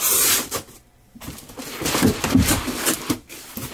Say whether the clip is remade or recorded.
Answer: recorded